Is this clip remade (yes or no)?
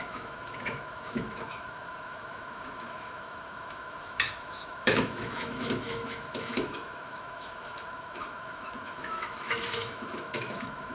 yes